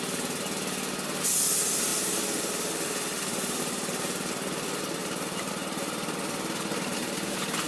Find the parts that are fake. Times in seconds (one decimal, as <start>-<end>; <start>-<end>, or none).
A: 5.0-5.5; 6.7-7.7